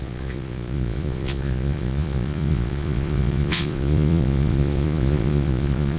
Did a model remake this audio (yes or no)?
yes